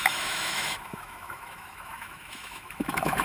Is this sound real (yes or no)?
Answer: no